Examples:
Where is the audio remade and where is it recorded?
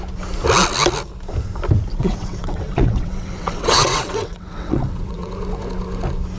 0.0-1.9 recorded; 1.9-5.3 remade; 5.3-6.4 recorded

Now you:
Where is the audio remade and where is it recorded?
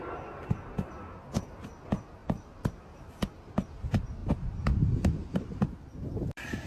0.0-2.2 recorded; 2.2-3.1 remade; 3.1-4.2 recorded; 4.2-5.6 remade; 5.6-6.7 recorded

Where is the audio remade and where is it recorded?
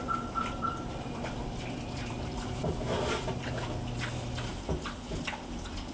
0.0-3.5 remade; 3.5-5.9 recorded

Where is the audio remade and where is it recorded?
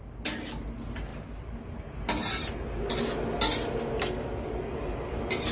0.0-5.5 recorded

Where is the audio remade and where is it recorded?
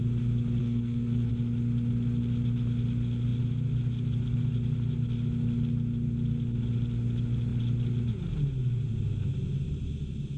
0.0-0.6 recorded; 0.6-1.3 remade; 1.3-10.4 recorded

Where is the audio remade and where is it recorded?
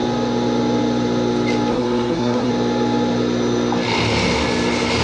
0.0-1.7 recorded; 1.7-2.5 remade; 2.5-5.0 recorded